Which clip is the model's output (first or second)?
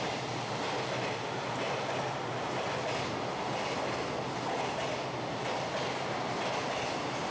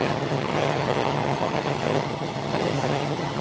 second